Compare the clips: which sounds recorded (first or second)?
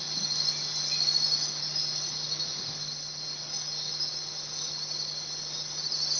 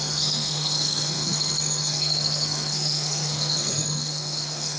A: first